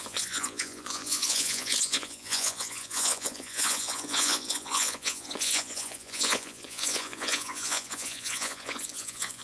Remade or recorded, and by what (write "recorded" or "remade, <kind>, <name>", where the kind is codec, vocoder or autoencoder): remade, vocoder, Vocos